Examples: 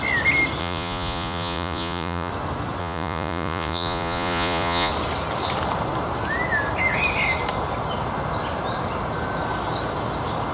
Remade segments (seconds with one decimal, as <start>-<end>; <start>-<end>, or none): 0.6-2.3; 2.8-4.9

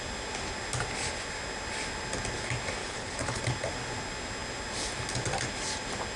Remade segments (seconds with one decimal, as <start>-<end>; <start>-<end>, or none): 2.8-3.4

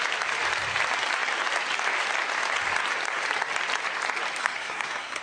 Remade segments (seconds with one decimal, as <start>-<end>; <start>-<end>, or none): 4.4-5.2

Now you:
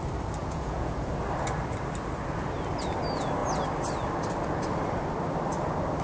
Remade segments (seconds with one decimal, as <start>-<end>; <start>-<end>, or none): 0.4-1.1